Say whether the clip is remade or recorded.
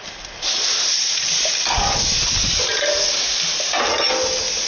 recorded